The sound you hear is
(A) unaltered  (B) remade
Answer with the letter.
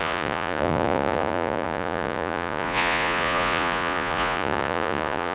B